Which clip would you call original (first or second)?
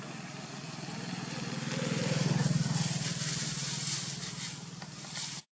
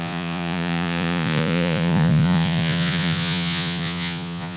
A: first